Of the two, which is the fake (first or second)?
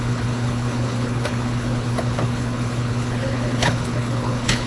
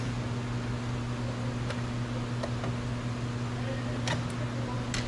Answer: first